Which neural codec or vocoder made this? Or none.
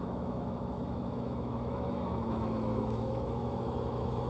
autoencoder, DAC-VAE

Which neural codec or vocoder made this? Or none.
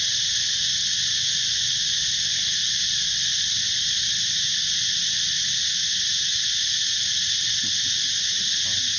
none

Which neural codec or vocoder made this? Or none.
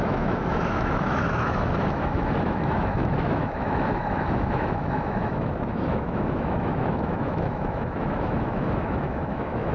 autoencoder, DAC-VAE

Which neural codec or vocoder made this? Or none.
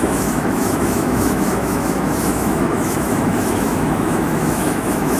autoencoder, DAC-VAE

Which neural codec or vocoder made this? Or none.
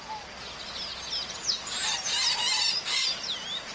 none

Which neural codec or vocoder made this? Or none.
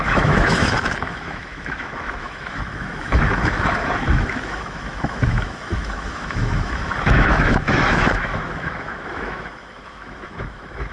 autoencoder, DAC-VAE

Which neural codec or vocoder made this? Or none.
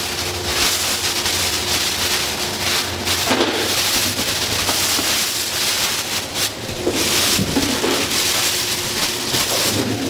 none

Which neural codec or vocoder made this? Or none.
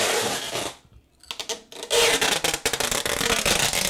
none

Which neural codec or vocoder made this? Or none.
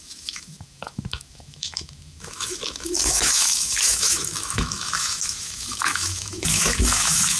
autoencoder, DAC-VAE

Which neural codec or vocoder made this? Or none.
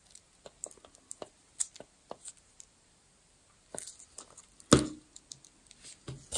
none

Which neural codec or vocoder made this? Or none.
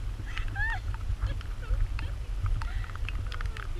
none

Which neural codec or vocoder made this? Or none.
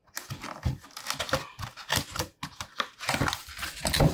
none